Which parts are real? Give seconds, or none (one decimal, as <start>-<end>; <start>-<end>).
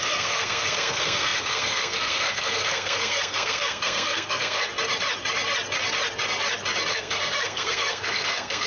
4.7-6.9